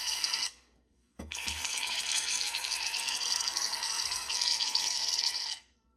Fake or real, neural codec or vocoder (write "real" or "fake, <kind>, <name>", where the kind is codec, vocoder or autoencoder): fake, codec, SNAC